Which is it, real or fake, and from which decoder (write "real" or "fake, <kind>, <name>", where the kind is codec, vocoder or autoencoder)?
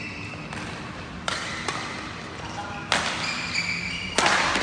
real